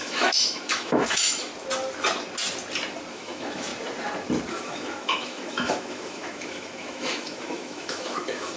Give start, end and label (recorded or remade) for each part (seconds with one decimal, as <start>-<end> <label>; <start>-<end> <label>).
0.0-1.5 remade; 1.5-3.1 recorded; 3.1-3.7 remade; 3.7-4.5 recorded; 4.5-8.6 remade